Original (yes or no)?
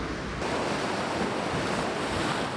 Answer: yes